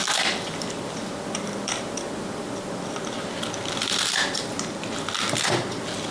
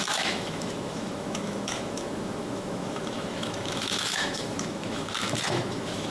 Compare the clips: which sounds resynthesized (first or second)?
second